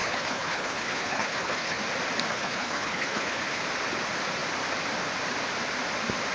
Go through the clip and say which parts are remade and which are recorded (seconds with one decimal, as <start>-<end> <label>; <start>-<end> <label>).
0.0-1.8 remade; 1.8-2.3 recorded; 2.3-3.6 remade; 3.6-6.3 recorded